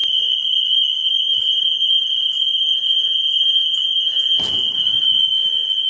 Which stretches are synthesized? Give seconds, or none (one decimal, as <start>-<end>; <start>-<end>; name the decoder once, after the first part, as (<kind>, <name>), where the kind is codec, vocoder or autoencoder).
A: 0.0-1.6 (vocoder, BigVGAN v2)